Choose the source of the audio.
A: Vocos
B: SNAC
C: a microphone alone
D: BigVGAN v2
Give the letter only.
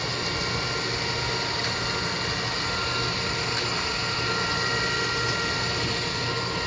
C